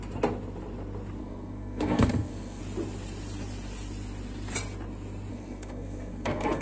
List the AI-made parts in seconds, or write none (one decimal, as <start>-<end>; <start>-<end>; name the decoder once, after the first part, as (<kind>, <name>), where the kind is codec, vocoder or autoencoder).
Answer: 1.2-2.6 (codec, SNAC); 5.3-6.6